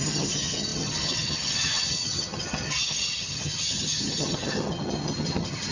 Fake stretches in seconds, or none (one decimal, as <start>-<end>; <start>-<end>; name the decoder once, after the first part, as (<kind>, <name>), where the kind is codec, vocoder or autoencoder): 0.0-5.7 (vocoder, HiFi-GAN)